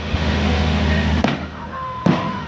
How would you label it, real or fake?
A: fake